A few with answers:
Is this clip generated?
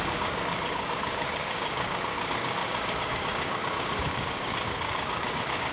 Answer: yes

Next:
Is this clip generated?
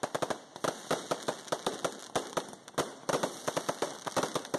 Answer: no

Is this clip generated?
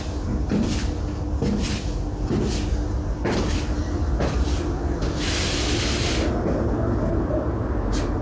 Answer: no